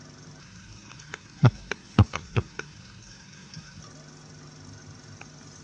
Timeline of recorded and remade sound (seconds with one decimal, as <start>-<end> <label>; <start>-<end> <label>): 0.0-0.4 recorded; 0.4-3.8 remade; 3.8-5.6 recorded